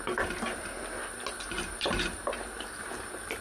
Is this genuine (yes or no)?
yes